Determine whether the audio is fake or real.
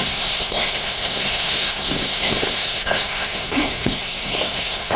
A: fake